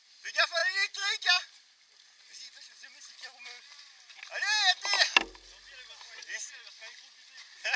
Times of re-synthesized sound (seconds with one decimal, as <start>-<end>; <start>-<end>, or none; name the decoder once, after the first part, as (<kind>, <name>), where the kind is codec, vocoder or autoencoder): none